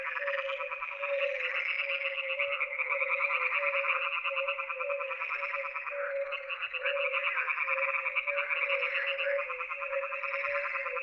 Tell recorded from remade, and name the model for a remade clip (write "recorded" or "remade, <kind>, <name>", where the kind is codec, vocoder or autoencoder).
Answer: recorded